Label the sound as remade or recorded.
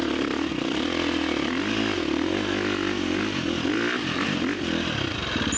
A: recorded